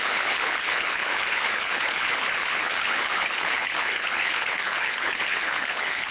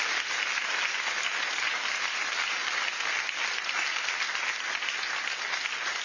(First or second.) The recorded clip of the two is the second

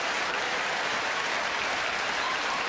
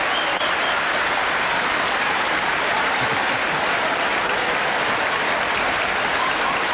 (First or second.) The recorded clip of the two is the second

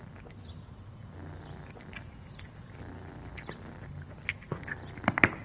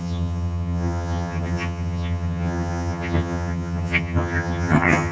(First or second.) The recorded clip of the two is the first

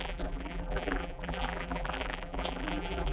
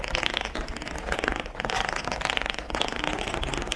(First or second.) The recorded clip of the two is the second